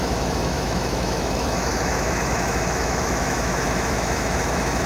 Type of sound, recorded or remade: remade